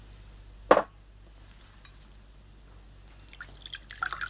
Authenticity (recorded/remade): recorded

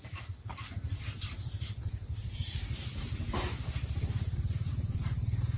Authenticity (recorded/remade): recorded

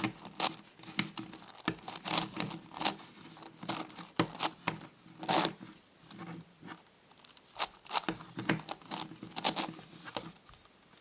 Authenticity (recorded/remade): recorded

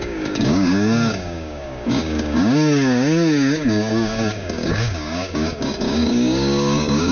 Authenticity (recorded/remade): remade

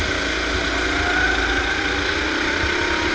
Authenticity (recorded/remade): recorded